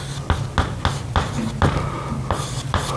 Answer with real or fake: real